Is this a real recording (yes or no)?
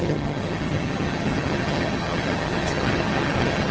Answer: no